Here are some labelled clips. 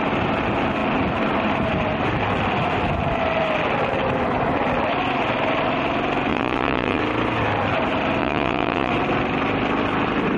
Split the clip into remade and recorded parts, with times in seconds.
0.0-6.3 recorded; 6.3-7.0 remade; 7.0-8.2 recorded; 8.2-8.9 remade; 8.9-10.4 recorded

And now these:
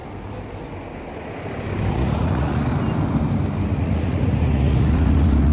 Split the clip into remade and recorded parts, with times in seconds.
0.0-1.9 recorded; 1.9-2.7 remade; 2.7-3.7 recorded; 3.7-5.5 remade

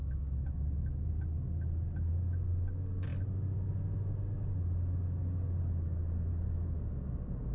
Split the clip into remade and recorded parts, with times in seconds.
0.0-7.5 recorded

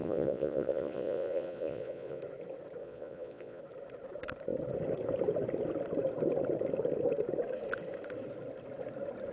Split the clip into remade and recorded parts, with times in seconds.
0.0-2.2 remade; 2.2-2.8 recorded; 2.8-3.6 remade; 3.6-9.3 recorded

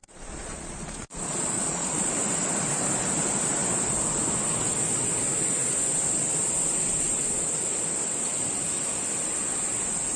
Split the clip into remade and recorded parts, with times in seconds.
0.0-2.1 remade; 2.1-10.2 recorded

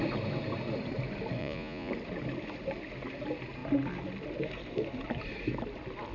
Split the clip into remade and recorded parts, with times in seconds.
0.0-1.4 recorded; 1.4-1.9 remade; 1.9-6.1 recorded

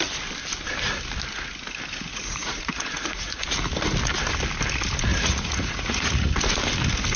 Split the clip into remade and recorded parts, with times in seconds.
0.0-2.1 recorded; 2.1-3.4 remade; 3.4-5.1 recorded; 5.1-6.3 remade; 6.3-7.2 recorded